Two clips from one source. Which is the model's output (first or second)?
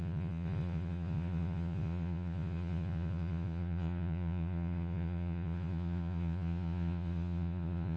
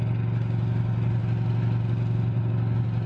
first